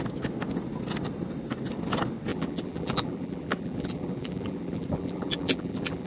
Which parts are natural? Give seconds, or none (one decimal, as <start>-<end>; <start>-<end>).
0.0-2.3